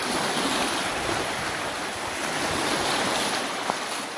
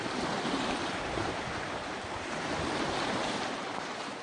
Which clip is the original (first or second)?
first